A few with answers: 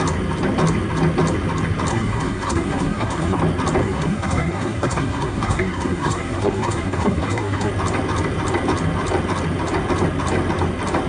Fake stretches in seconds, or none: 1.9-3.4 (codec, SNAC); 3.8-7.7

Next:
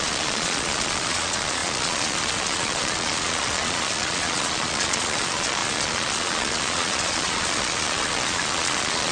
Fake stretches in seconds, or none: 0.0-9.1 (vocoder, Vocos)

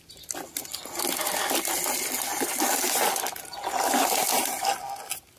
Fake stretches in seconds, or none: none

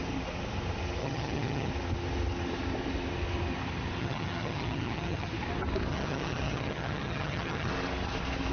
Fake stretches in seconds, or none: 1.0-1.7 (vocoder, HiFi-GAN); 4.0-5.3; 5.9-7.7

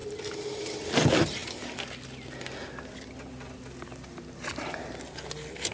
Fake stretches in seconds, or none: none

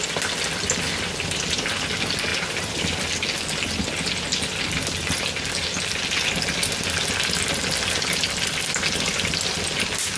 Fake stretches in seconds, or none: 2.3-3.0 (vocoder, BigVGAN v2)

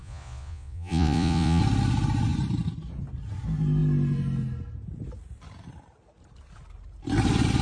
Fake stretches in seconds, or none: 0.0-1.6 (vocoder, Vocos)